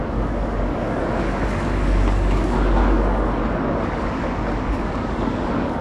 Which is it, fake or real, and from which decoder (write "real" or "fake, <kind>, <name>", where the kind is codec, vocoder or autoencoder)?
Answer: fake, codec, DAC